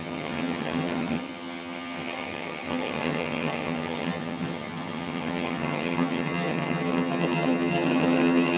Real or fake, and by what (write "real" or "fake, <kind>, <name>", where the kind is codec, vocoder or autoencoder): fake, vocoder, HiFi-GAN